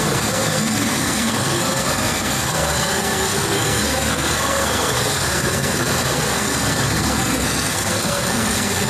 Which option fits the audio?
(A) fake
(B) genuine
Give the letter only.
A